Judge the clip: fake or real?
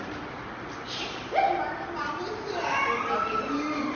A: real